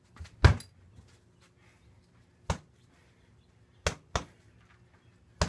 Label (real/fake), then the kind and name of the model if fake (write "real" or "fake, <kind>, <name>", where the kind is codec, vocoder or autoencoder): real